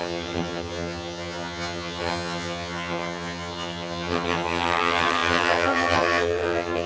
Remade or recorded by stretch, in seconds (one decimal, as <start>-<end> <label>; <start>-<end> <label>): 0.0-6.9 remade